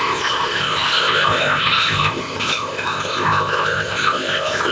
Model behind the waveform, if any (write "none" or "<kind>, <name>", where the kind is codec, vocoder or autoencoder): codec, ZipCodec